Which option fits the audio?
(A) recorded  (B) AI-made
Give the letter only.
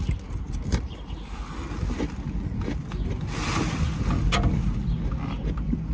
A